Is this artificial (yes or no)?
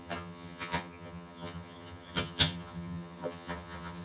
yes